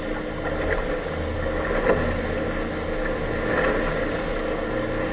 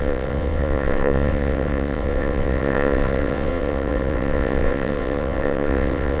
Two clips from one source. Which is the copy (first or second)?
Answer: second